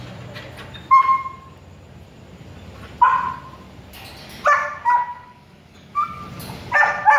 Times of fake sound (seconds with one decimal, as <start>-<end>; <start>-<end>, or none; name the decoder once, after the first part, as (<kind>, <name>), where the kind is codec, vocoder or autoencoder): 5.1-6.2 (codec, DAC)